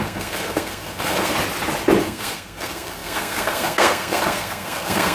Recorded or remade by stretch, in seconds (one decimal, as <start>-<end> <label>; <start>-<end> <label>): 0.0-1.3 remade; 1.3-2.0 recorded; 2.0-5.1 remade